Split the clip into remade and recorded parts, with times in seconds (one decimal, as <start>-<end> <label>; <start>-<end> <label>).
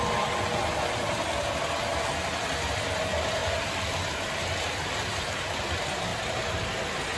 0.0-7.2 recorded